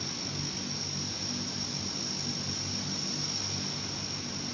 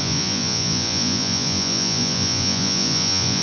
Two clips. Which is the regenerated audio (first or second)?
second